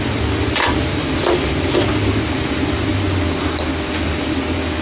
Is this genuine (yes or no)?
yes